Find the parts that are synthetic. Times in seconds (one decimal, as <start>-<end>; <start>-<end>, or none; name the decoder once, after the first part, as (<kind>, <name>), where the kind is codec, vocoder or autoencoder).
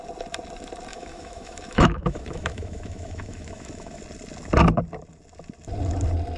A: 0.9-4.0 (autoencoder, DAC-VAE)